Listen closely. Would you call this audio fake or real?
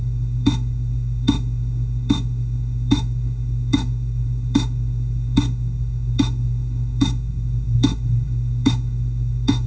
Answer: fake